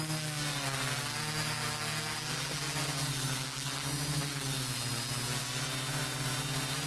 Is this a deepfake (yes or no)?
no